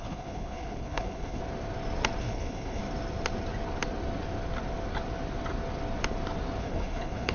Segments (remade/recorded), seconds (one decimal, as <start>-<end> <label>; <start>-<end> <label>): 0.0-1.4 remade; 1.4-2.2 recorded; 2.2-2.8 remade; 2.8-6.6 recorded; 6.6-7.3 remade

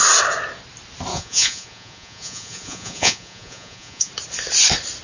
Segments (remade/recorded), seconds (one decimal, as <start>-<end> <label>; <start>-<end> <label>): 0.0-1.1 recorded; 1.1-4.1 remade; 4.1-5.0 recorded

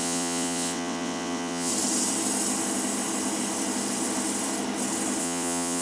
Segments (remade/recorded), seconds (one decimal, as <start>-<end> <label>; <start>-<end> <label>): 0.0-1.7 remade; 1.7-5.2 recorded; 5.2-5.8 remade

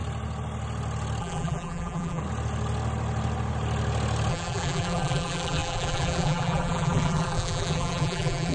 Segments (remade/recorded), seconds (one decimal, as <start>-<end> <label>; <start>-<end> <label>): 0.0-1.2 recorded; 1.2-2.2 remade; 2.2-4.3 recorded; 4.3-8.5 remade

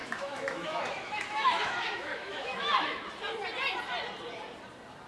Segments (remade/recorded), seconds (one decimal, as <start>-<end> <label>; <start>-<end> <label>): 0.0-3.1 remade; 3.1-5.1 recorded

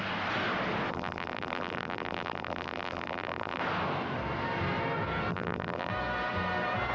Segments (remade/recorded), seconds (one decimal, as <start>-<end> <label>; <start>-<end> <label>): 0.0-0.9 recorded; 0.9-3.6 remade; 3.6-5.3 recorded; 5.3-5.9 remade; 5.9-6.9 recorded

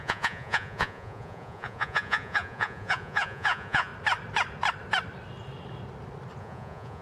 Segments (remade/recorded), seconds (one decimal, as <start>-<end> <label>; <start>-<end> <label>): 0.0-3.9 remade; 3.9-6.4 recorded; 6.4-7.0 remade